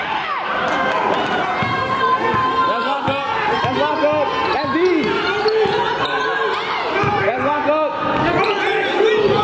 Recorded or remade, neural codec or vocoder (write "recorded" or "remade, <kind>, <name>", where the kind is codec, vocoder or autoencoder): recorded